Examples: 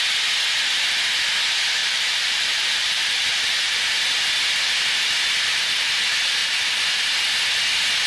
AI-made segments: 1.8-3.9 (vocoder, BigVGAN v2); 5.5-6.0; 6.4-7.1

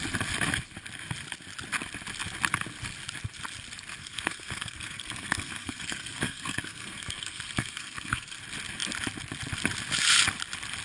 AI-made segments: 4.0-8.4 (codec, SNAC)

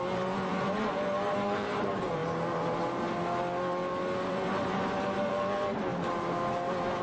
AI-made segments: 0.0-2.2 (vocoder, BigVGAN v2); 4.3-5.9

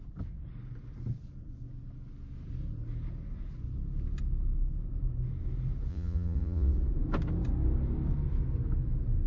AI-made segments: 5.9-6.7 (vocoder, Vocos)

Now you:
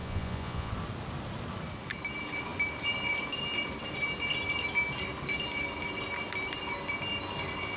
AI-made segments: 0.0-0.7 (vocoder, Vocos)

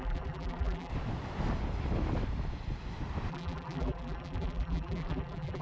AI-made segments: 0.0-0.9 (vocoder, BigVGAN v2); 3.3-5.6

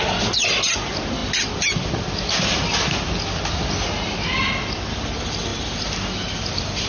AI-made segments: none

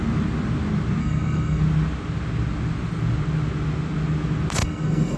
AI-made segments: 1.0-1.6 (codec, SNAC); 4.6-5.2